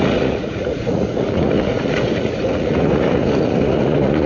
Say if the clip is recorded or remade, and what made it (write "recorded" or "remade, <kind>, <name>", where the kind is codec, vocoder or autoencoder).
remade, vocoder, Vocos